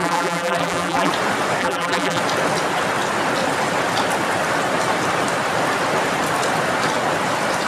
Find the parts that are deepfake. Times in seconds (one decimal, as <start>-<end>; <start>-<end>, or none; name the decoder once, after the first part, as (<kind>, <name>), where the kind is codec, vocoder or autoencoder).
0.0-1.1 (vocoder, BigVGAN v2); 1.6-2.2